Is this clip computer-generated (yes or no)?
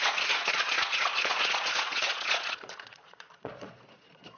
yes